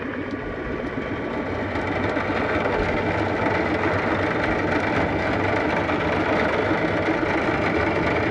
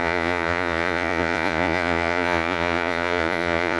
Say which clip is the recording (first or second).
first